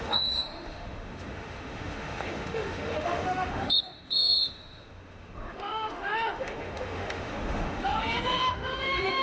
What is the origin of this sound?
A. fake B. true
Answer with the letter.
A